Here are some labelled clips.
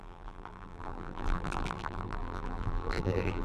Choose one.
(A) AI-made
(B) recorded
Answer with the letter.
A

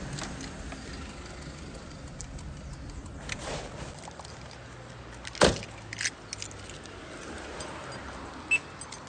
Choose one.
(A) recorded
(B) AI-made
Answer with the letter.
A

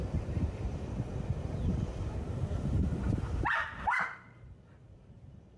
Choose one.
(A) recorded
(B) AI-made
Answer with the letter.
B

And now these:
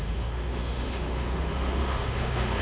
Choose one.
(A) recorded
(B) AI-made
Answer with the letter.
B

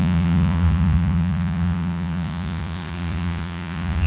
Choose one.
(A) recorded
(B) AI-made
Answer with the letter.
B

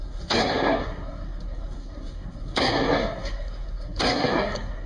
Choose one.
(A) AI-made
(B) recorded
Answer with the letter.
A